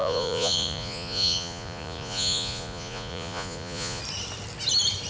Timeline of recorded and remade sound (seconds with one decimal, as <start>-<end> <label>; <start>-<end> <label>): 0.0-4.0 remade; 4.0-5.1 recorded